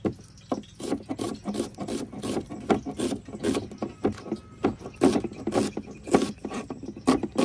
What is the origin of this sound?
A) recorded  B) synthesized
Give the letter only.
A